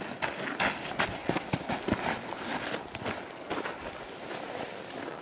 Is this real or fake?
real